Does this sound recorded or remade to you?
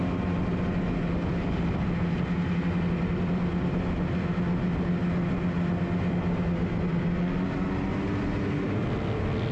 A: recorded